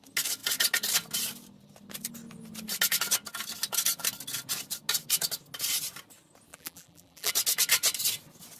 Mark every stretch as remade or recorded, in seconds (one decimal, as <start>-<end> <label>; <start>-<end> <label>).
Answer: 0.0-6.5 recorded; 6.5-7.3 remade; 7.3-8.6 recorded